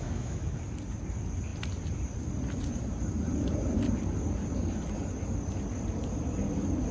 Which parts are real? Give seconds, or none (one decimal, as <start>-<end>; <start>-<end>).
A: 0.6-6.9